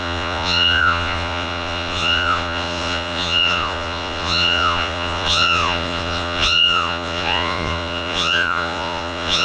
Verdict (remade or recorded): remade